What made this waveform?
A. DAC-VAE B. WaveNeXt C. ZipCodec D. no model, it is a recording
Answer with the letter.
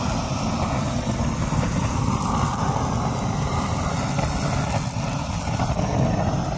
D